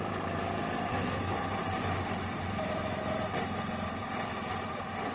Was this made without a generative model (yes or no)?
yes